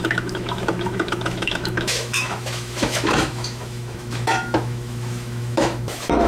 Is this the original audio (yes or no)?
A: no